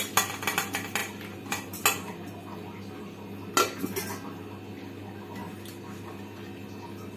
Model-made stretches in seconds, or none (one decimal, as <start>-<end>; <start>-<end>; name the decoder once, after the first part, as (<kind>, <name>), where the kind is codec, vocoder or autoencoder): none